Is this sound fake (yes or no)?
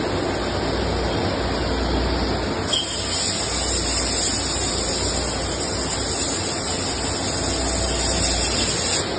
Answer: no